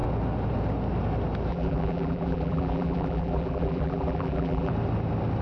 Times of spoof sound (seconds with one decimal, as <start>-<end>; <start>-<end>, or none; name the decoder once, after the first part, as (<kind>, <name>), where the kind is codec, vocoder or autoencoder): 1.5-4.7 (vocoder, BigVGAN v2)